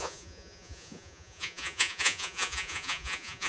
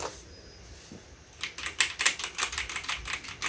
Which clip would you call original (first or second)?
second